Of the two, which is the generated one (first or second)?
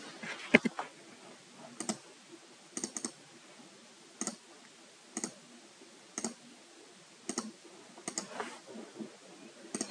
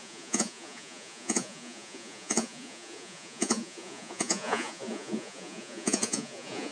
second